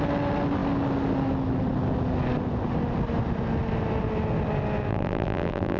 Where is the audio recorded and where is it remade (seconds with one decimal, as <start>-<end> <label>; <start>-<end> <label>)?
0.0-4.9 recorded; 4.9-5.8 remade